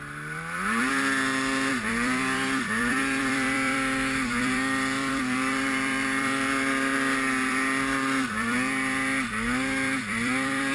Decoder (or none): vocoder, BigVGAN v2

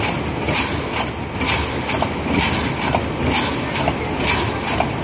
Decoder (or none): none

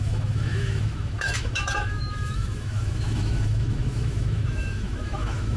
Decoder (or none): autoencoder, DAC-VAE